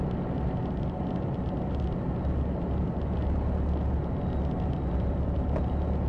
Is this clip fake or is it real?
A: real